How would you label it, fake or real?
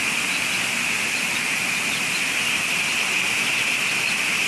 real